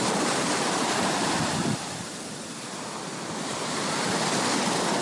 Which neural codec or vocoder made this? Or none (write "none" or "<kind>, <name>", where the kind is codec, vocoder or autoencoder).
vocoder, BigVGAN v2